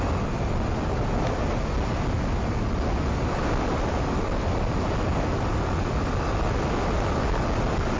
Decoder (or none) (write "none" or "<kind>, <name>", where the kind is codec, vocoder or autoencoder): none